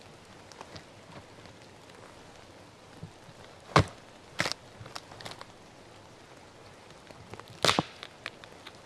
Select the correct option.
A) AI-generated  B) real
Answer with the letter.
B